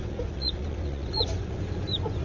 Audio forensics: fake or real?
fake